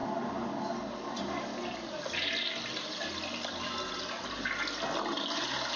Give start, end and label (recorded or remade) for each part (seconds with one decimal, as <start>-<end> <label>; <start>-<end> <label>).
0.0-5.8 recorded